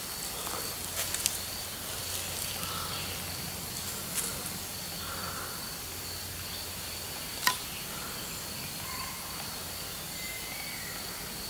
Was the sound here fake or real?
real